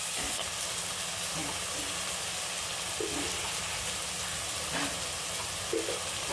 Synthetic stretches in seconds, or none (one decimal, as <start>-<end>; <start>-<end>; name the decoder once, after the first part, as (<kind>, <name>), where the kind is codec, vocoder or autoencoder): none